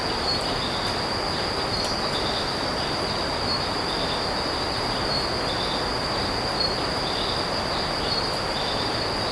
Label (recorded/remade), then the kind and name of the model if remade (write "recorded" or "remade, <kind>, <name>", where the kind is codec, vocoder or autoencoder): recorded